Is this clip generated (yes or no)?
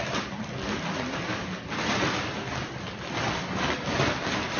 no